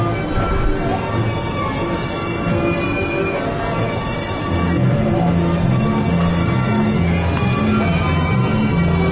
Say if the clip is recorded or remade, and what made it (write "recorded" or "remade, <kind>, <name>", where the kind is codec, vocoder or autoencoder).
recorded